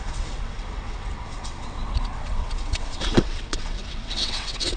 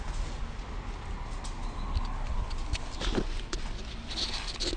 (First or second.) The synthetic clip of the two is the first